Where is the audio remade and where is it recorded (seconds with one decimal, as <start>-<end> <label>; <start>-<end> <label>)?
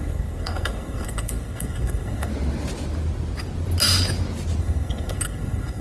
0.0-2.3 remade; 2.3-4.6 recorded; 4.6-5.8 remade